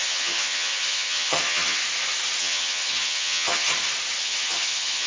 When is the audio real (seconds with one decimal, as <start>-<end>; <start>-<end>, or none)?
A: 1.8-2.4; 3.7-4.2